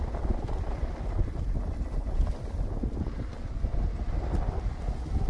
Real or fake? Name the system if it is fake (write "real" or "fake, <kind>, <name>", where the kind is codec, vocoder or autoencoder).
real